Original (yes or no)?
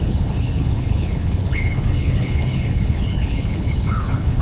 no